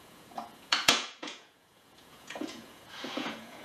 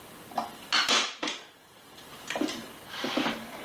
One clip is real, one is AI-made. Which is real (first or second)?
second